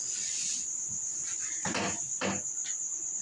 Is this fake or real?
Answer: real